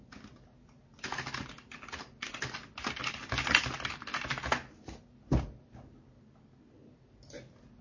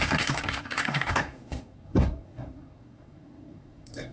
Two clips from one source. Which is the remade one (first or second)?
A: second